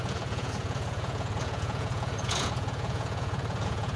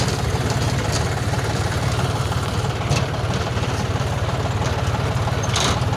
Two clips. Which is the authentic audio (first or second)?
second